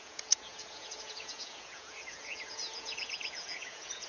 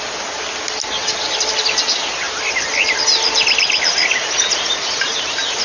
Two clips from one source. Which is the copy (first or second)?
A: first